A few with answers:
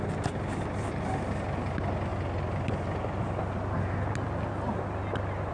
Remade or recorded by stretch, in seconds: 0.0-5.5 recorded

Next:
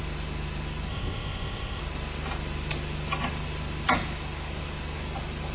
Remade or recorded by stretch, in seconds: 0.0-0.9 recorded; 0.9-1.8 remade; 1.8-5.5 recorded

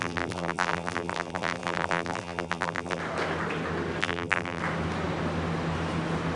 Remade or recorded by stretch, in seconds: 0.0-3.0 remade; 3.0-4.0 recorded; 4.0-4.6 remade; 4.6-6.4 recorded